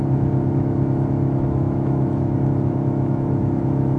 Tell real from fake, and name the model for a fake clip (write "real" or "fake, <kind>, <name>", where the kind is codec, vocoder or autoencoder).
fake, autoencoder, DAC-VAE